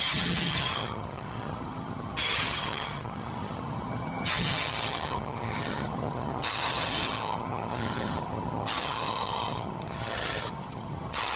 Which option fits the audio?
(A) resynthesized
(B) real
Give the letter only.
A